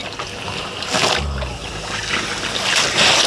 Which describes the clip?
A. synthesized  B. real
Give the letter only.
B